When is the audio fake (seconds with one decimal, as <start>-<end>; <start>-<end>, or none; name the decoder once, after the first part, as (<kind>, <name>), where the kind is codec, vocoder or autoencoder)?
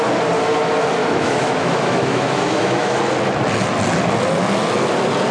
1.0-3.0 (autoencoder, DAC-VAE)